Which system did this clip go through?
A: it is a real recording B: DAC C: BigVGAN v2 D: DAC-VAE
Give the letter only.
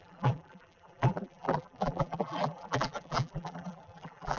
C